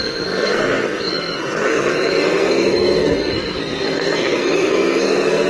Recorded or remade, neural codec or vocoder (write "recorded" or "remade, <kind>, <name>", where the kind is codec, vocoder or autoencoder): remade, codec, SNAC